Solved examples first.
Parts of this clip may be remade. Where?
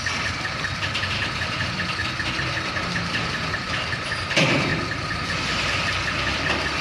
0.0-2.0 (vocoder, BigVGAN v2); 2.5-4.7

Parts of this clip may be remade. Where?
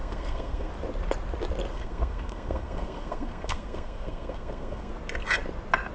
0.0-0.7 (codec, SNAC); 1.7-4.9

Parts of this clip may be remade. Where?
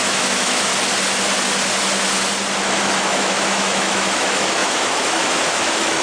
0.0-0.7 (autoencoder, DAC-VAE); 2.8-6.0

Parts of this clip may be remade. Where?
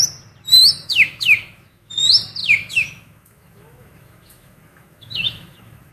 0.6-1.9 (autoencoder, DAC-VAE); 2.4-5.9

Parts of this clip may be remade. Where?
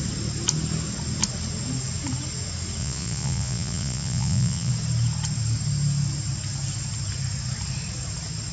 2.8-4.7 (vocoder, Vocos)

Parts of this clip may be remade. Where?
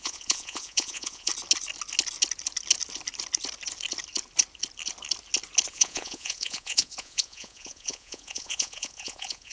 0.0-1.3 (vocoder, Vocos); 5.7-9.5